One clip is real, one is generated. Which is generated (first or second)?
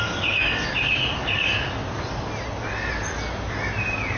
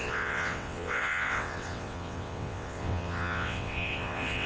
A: second